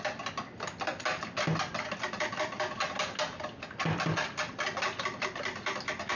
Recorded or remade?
recorded